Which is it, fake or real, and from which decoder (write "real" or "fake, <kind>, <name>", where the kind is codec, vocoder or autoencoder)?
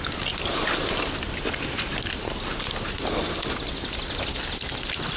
real